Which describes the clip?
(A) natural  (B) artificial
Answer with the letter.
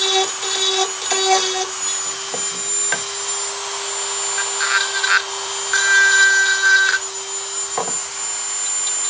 A